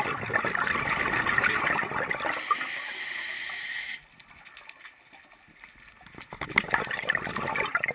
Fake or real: real